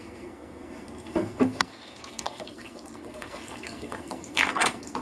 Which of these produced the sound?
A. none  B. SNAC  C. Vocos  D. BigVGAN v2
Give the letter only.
B